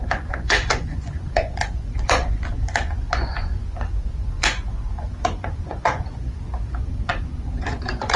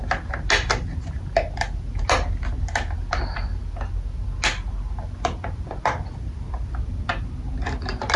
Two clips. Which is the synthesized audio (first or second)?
first